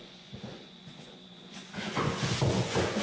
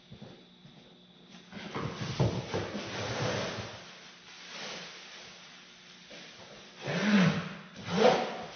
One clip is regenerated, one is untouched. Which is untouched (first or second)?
second